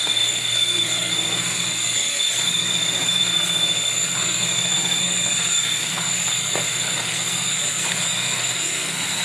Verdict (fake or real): fake